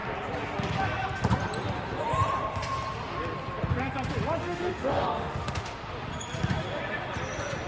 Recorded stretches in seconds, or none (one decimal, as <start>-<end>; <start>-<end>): 0.0-4.4; 5.9-7.7